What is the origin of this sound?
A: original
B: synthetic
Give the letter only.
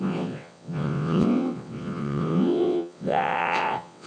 B